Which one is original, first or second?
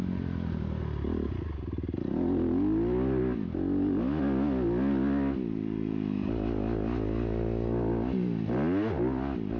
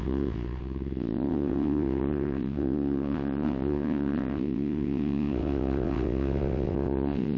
first